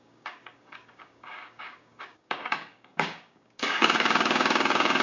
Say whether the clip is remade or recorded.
remade